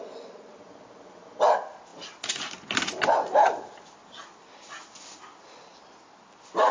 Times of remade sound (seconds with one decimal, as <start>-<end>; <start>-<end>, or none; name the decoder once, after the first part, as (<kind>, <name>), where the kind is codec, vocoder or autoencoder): none